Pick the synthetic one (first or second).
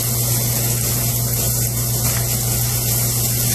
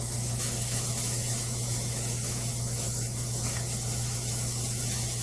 second